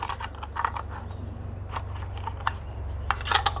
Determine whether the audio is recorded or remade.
recorded